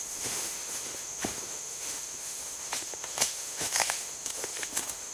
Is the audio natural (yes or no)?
no